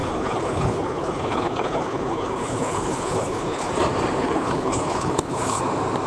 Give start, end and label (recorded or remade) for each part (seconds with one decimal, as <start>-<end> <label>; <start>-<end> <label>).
0.0-3.7 remade; 3.7-4.2 recorded; 4.2-5.6 remade; 5.6-6.1 recorded